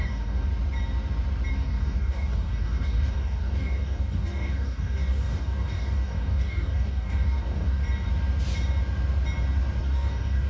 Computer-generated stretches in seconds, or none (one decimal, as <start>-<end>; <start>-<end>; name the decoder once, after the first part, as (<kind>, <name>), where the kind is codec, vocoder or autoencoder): 0.0-0.5 (codec, DAC); 1.5-7.8; 9.8-10.5